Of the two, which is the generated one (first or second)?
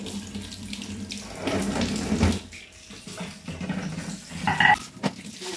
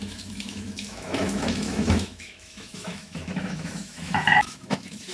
second